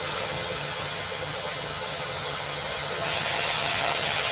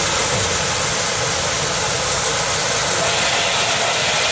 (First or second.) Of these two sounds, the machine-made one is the first